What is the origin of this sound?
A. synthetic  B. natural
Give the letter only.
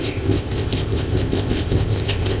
A